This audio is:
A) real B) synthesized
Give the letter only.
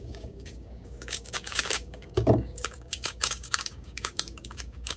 B